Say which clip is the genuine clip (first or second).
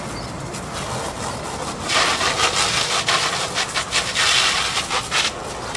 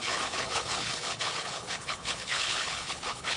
first